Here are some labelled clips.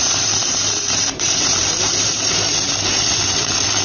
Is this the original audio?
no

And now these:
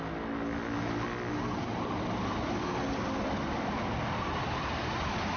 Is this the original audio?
yes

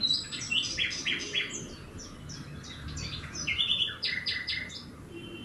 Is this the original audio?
yes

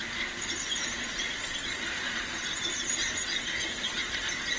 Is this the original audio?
yes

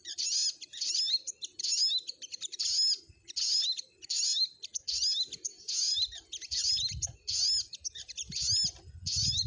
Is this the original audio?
yes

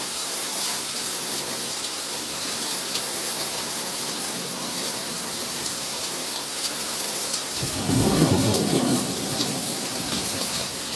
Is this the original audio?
no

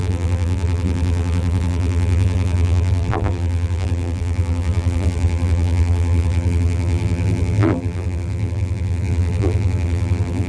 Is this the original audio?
no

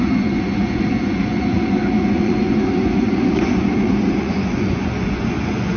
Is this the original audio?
no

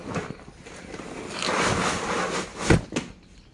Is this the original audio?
yes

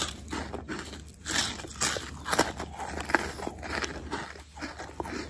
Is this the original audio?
yes